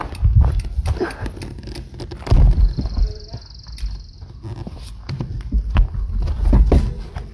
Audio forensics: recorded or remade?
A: recorded